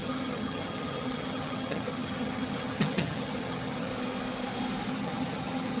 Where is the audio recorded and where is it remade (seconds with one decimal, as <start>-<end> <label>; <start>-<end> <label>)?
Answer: 0.0-3.9 remade; 3.9-4.9 recorded; 4.9-5.8 remade

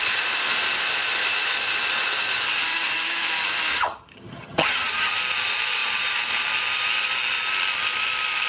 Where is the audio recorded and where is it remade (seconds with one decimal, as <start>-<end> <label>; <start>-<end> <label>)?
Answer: 0.0-3.7 recorded; 3.7-5.1 remade; 5.1-8.5 recorded

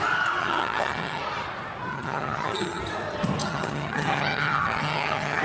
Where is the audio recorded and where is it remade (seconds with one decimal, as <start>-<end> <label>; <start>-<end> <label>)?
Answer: 0.0-0.4 recorded; 0.4-1.2 remade; 1.2-1.9 recorded; 1.9-2.8 remade; 2.8-3.4 recorded; 3.4-5.4 remade

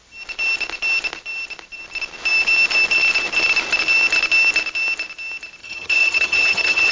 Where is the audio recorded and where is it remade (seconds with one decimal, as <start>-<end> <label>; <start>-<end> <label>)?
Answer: 0.0-5.6 recorded; 5.6-6.9 remade

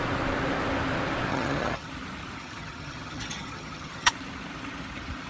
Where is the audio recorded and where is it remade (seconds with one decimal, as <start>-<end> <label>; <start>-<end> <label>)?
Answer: 0.0-1.3 recorded; 1.3-1.9 remade; 1.9-2.4 recorded; 2.4-4.1 remade; 4.1-5.3 recorded